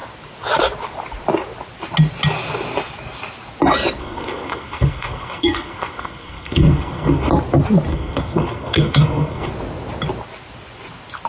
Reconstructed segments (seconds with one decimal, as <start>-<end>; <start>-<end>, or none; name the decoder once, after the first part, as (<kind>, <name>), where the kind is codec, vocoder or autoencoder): 4.0-7.3 (codec, SNAC); 7.9-9.5